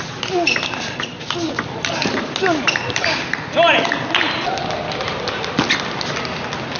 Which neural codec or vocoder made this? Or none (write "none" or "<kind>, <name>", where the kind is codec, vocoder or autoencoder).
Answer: none